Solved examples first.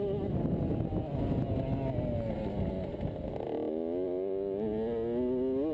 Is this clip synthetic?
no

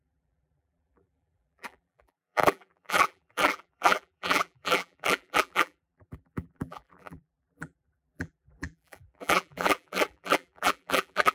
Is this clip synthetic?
yes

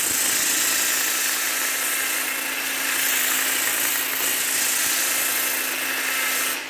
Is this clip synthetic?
no